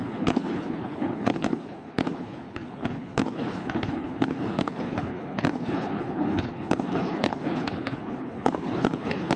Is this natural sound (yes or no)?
no